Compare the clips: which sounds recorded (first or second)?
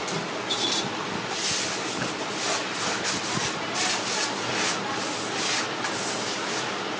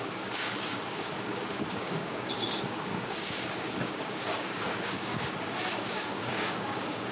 first